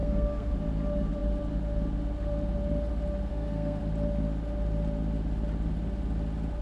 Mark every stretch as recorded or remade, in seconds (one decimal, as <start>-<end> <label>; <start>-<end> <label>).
0.0-0.5 remade; 0.5-3.3 recorded; 3.3-3.8 remade; 3.8-6.6 recorded